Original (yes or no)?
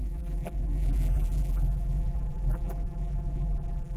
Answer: no